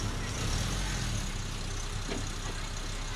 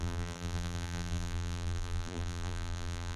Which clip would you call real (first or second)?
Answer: first